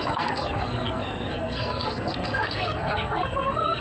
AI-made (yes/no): yes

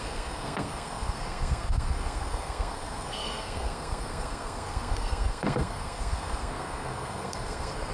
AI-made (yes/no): yes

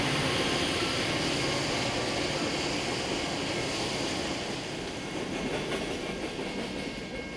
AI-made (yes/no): no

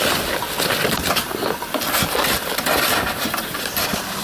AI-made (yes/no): no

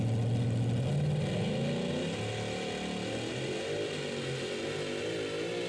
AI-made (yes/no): no